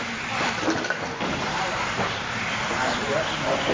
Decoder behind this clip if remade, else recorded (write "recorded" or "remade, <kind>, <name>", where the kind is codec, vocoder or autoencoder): recorded